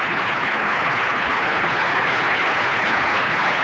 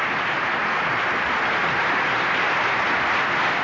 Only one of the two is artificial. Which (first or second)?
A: first